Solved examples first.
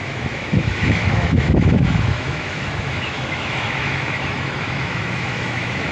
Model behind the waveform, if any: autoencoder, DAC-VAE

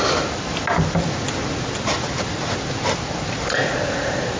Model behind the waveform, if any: none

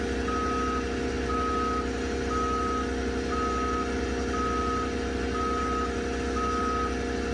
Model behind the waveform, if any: none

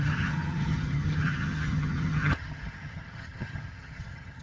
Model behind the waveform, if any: vocoder, HiFi-GAN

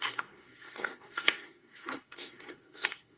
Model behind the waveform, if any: codec, SNAC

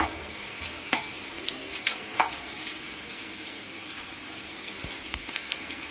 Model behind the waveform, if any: codec, SNAC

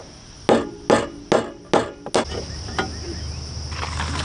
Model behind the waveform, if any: none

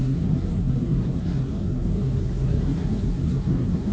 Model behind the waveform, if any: codec, SNAC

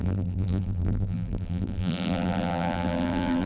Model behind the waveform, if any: vocoder, BigVGAN v2